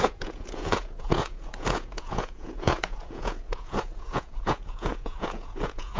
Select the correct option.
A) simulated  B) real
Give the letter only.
A